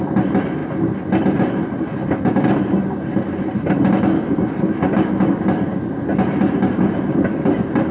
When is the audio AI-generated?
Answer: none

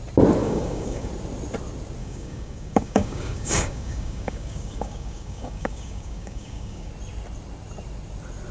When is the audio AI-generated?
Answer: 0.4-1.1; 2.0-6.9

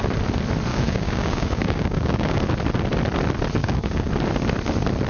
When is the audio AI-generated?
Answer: 0.7-2.4; 3.6-4.1

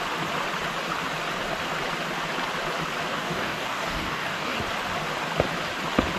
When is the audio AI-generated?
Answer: 3.1-4.6

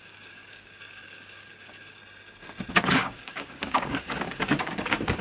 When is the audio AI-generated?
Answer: 0.0-2.0; 2.9-5.2